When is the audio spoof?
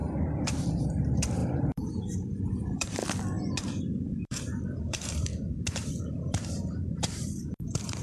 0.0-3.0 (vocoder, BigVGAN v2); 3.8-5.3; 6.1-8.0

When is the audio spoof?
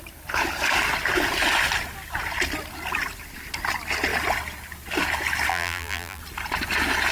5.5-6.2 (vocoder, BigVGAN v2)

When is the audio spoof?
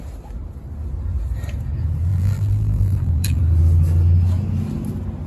2.1-3.4 (vocoder, BigVGAN v2)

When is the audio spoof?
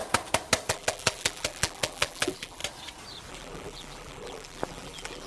0.7-2.6 (vocoder, BigVGAN v2); 3.3-5.3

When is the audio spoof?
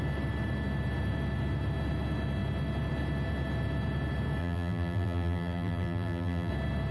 4.4-6.5 (vocoder, BigVGAN v2)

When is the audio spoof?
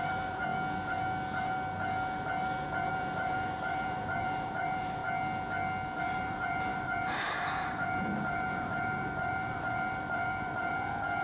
0.0-0.5 (vocoder, BigVGAN v2); 2.9-5.0; 6.0-11.2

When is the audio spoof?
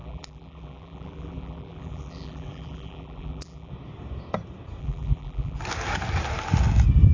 0.0-3.7 (vocoder, BigVGAN v2); 4.8-5.6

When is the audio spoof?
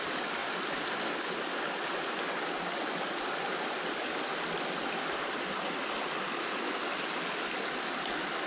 0.4-1.0 (vocoder, BigVGAN v2)